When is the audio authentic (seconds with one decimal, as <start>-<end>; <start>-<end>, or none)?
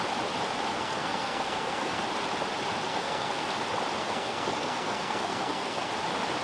0.0-0.7; 2.0-2.9; 3.5-4.0; 5.9-6.4